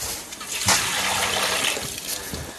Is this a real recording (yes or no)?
yes